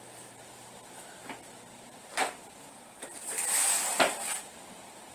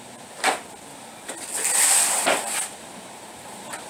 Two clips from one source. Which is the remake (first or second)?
first